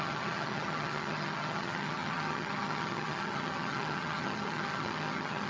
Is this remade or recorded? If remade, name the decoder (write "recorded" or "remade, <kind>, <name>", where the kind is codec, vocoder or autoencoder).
remade, vocoder, HiFi-GAN